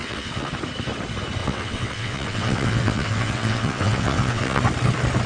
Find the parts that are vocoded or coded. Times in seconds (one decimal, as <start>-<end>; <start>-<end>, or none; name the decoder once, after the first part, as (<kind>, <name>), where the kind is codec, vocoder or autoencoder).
0.0-0.5 (vocoder, WaveNeXt); 1.4-4.6